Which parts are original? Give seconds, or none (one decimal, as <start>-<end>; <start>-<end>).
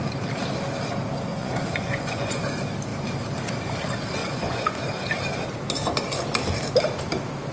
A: 0.0-1.3; 2.4-4.2; 4.8-7.5